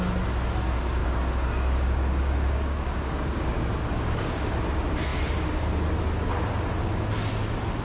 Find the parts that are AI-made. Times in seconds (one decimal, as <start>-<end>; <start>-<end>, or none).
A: 1.0-4.5